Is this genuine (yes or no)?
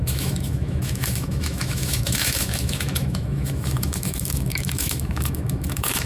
no